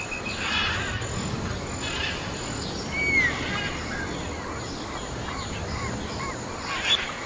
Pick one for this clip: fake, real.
real